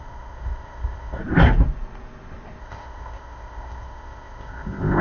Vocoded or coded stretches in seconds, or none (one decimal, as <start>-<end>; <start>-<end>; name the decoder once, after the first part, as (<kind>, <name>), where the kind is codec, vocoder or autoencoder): 0.0-1.2 (codec, ZipCodec); 2.6-5.0